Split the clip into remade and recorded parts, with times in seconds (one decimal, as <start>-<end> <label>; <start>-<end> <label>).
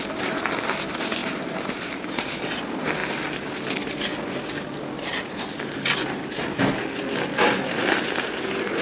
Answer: 0.0-1.2 recorded; 1.2-2.4 remade; 2.4-8.8 recorded